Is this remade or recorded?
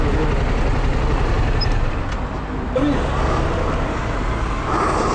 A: recorded